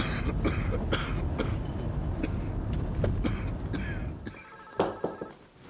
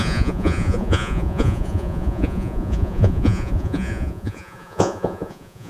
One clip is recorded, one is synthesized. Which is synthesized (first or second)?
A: second